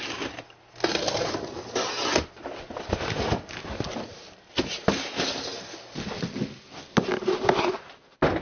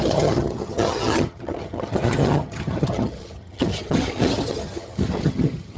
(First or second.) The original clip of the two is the first